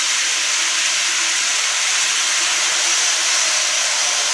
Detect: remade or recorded recorded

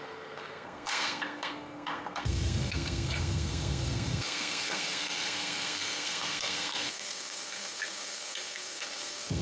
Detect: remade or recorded remade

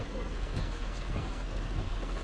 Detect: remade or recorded remade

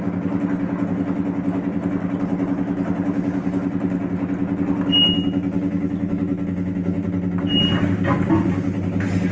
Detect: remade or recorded recorded